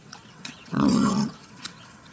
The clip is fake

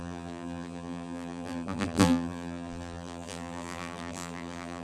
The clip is fake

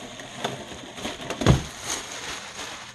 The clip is real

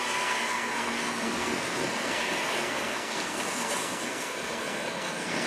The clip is fake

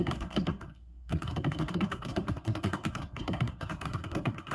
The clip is fake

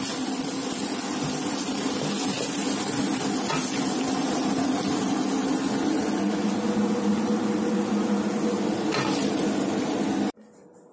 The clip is real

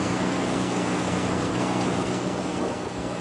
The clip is fake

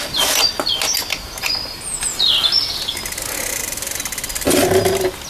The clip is real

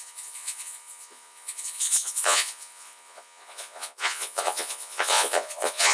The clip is fake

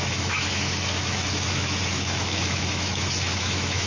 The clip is fake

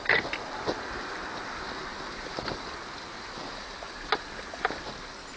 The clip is real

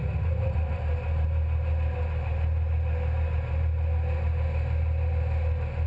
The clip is real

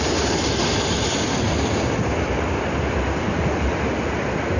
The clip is real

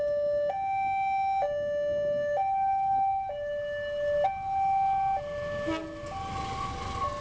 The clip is real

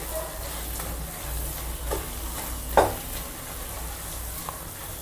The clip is real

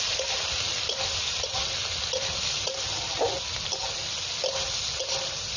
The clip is real